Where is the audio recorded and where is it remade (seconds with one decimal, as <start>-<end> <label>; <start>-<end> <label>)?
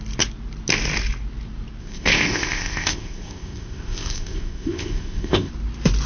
0.0-1.8 recorded; 1.8-5.5 remade; 5.5-6.1 recorded